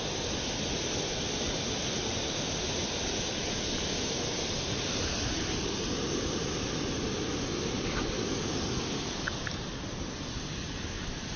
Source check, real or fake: real